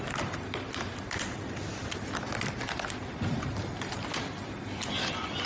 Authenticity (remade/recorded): remade